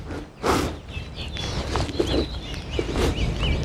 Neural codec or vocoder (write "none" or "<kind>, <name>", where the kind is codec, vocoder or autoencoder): none